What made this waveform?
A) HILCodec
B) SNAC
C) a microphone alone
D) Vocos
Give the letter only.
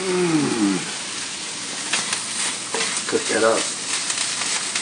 C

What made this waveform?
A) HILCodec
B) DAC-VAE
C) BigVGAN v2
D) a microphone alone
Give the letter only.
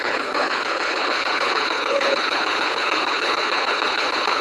A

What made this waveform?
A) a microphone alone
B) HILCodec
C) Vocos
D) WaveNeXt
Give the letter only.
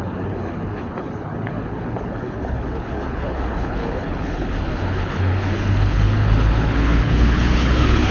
B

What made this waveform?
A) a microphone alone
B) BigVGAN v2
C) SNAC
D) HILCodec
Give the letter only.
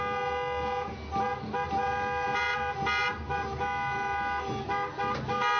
A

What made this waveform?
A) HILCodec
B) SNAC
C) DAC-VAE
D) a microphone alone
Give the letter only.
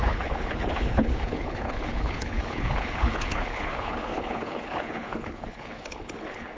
A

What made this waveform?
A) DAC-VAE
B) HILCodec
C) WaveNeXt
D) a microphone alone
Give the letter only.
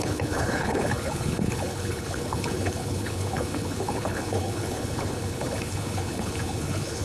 B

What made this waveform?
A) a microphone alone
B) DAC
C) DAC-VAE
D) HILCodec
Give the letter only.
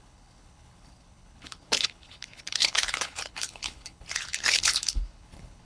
D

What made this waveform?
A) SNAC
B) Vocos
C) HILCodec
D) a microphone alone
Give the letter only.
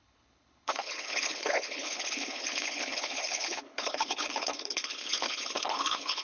C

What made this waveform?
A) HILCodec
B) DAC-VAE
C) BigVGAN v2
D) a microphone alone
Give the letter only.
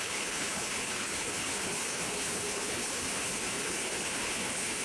A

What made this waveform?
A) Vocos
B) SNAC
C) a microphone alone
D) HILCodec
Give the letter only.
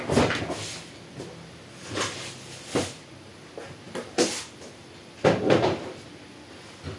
C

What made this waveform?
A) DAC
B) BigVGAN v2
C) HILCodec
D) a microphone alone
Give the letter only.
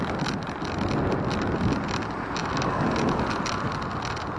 D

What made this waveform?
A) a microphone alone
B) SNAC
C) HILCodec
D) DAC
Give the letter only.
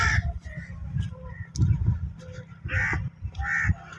A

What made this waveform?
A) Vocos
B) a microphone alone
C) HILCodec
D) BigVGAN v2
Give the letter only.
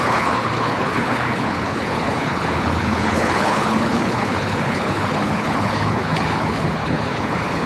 C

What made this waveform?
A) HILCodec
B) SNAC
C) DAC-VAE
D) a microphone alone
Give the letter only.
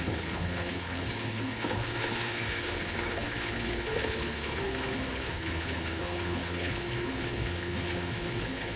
A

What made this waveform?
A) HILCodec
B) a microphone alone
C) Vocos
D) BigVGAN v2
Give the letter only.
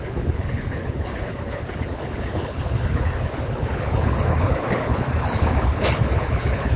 A